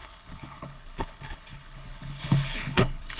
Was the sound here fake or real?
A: fake